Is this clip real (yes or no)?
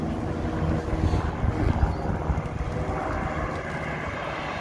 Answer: yes